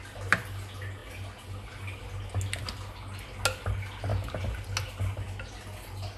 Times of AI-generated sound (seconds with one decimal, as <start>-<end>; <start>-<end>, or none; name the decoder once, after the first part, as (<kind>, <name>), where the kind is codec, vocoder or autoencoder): none